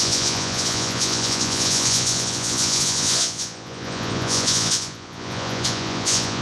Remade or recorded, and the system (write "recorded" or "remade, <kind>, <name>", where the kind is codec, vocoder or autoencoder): remade, vocoder, Vocos